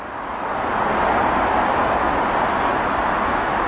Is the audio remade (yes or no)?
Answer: no